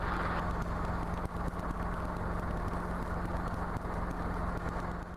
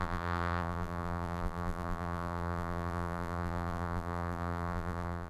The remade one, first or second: second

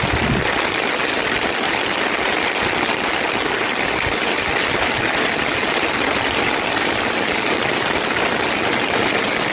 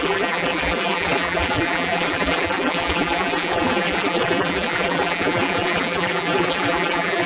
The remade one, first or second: second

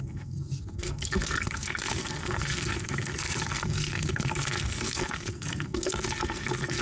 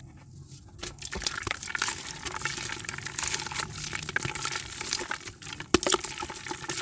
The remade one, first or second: first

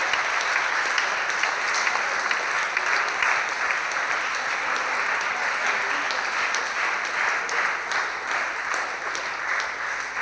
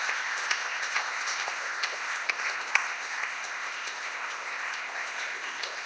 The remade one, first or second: second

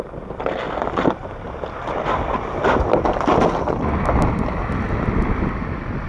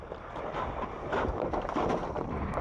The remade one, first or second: second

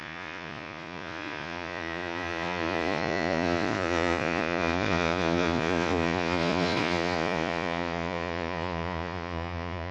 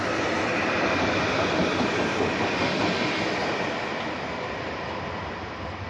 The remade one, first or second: first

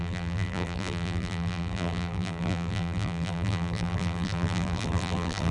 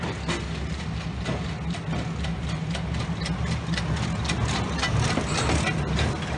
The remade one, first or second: first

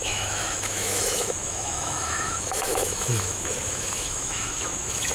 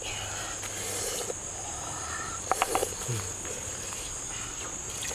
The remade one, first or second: first